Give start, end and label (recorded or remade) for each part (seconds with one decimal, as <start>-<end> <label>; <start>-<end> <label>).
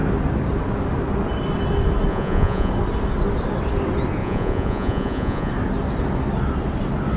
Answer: 0.0-2.1 recorded; 2.1-2.7 remade; 2.7-4.2 recorded; 4.2-5.5 remade; 5.5-7.2 recorded